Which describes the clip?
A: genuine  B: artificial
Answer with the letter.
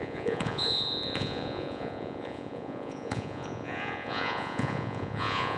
B